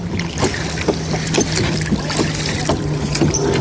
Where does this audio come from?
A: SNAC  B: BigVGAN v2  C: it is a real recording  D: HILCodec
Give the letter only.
C